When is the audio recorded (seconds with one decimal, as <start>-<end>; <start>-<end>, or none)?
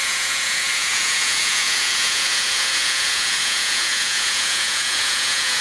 none